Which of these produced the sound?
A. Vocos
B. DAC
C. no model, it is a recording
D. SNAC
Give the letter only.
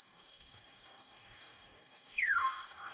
B